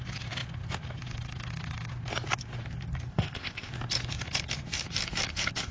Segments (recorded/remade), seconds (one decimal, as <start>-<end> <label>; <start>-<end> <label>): 0.0-3.1 recorded; 3.1-3.7 remade; 3.7-5.7 recorded